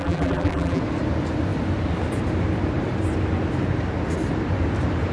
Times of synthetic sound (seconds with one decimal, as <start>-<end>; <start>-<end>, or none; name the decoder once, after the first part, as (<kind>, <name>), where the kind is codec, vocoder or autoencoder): 0.0-0.8 (vocoder, BigVGAN v2)